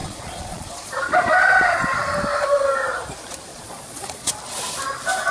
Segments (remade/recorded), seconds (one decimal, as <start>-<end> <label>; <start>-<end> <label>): 0.0-1.0 remade; 1.0-3.5 recorded; 3.5-4.3 remade; 4.3-5.3 recorded